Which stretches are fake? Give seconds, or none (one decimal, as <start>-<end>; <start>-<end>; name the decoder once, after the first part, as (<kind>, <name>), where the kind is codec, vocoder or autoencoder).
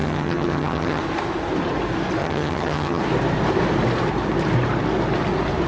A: 0.0-1.0 (vocoder, HiFi-GAN); 2.2-3.0